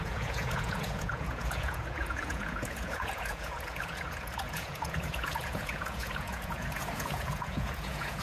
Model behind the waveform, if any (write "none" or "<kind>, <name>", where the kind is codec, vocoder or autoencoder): vocoder, Vocos